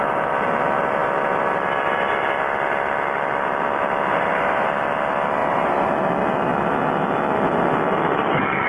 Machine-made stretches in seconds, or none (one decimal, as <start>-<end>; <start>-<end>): 4.1-4.7; 5.4-5.9